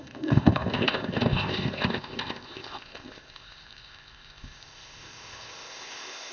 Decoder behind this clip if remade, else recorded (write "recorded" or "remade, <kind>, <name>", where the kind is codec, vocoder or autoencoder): remade, codec, ZipCodec